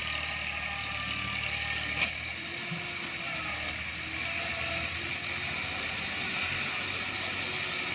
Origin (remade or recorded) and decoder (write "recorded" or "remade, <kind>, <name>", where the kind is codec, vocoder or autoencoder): recorded